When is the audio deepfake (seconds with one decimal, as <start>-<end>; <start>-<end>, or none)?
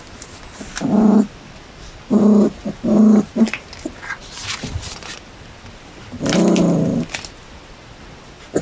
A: none